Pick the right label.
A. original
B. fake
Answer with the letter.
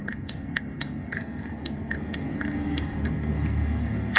B